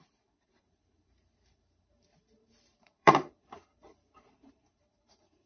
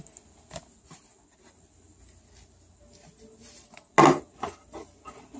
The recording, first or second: second